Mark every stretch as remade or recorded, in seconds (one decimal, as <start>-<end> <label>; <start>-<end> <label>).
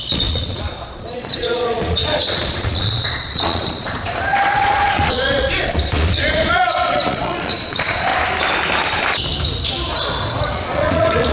0.0-8.1 remade; 8.1-10.5 recorded; 10.5-11.3 remade